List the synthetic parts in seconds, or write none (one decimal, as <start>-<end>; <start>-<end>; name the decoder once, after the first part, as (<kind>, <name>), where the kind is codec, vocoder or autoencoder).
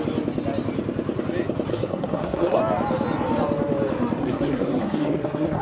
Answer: 1.7-2.6 (codec, SNAC); 4.2-5.6